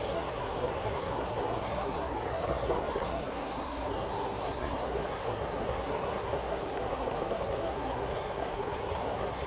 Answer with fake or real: fake